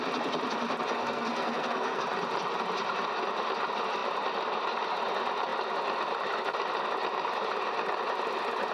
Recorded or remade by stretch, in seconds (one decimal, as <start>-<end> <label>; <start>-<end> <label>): 0.0-0.9 recorded; 0.9-2.0 remade; 2.0-8.7 recorded